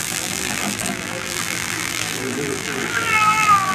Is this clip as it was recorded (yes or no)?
no